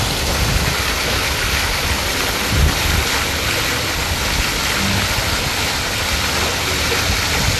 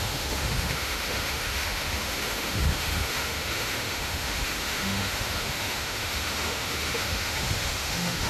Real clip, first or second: first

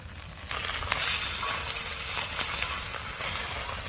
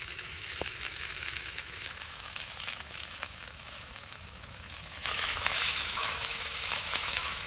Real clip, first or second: first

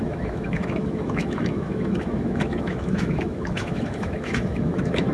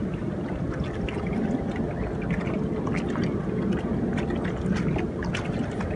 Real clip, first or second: second